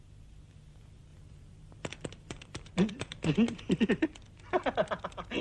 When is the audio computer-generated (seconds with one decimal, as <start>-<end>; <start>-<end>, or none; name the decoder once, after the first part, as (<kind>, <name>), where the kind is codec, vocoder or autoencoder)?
1.1-3.9 (vocoder, BigVGAN v2)